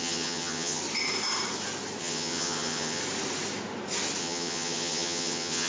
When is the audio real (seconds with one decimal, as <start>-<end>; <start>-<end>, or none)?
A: 0.8-2.0; 3.0-4.2